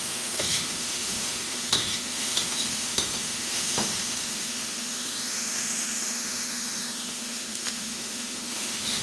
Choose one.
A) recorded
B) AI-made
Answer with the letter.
B